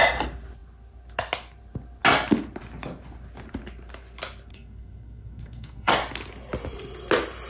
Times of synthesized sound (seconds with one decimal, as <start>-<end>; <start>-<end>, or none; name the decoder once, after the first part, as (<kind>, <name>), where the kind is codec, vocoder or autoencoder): 4.5-5.9 (codec, SNAC)